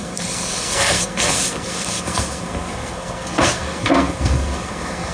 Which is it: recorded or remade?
remade